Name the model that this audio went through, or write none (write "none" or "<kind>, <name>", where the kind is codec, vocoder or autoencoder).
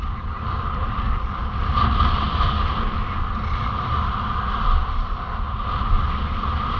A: none